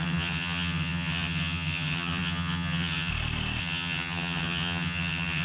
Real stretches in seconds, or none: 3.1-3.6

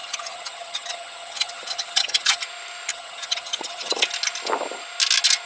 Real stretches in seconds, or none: 2.4-2.9; 4.0-5.5